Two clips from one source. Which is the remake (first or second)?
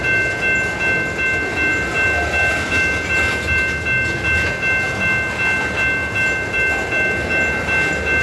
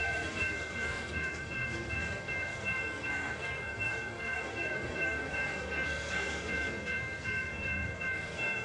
second